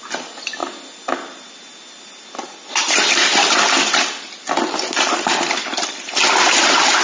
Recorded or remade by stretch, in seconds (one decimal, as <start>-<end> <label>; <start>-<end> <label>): 0.0-7.0 recorded